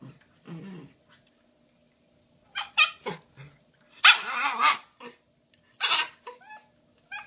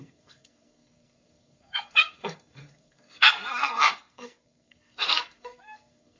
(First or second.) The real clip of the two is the first